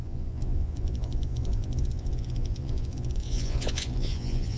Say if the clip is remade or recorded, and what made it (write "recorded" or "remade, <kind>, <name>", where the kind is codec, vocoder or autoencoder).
remade, vocoder, Vocos